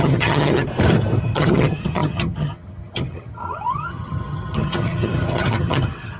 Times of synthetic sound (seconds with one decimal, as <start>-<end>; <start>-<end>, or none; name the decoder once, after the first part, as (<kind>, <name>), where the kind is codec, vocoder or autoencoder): 0.0-0.7 (vocoder, HiFi-GAN); 1.2-6.2